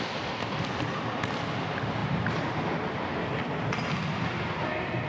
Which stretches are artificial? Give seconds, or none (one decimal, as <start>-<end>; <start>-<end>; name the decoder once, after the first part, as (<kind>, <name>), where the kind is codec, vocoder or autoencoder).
none